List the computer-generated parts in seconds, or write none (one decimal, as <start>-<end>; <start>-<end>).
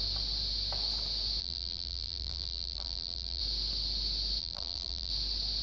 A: 1.4-3.4; 4.4-5.1